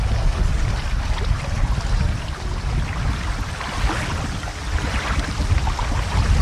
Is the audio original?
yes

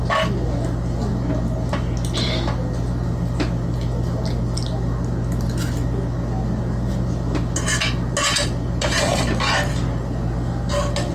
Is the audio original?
yes